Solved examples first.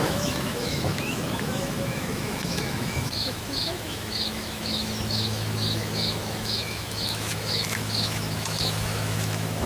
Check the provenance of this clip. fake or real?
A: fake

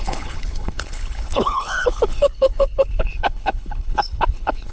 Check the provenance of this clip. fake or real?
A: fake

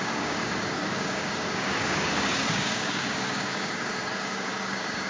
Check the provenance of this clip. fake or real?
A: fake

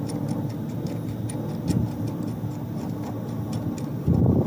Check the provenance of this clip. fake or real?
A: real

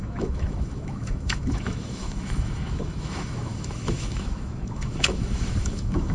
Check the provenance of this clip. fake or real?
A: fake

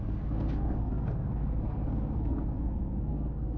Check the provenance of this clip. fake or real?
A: fake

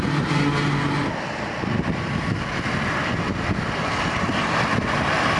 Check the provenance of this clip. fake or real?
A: real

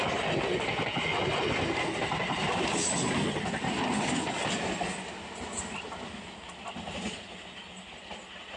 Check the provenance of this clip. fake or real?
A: real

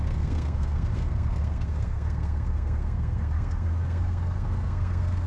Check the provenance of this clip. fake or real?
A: fake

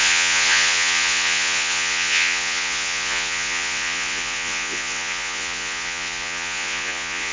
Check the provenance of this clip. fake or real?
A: fake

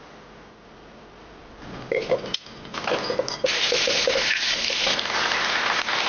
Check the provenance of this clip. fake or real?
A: real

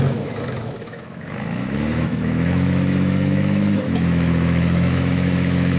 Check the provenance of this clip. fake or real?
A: fake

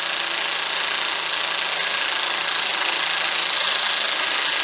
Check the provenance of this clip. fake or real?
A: real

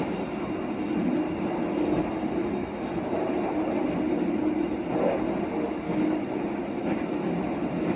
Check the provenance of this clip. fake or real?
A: real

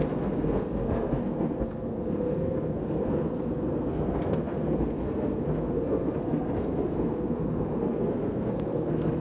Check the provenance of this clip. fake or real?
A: fake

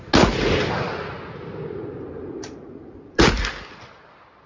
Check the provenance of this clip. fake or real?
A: real